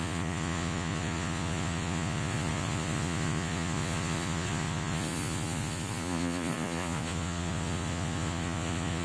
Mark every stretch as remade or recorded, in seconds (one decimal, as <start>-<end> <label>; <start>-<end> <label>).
0.0-9.0 remade